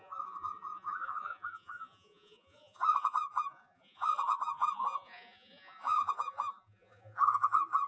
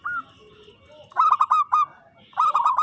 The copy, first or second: first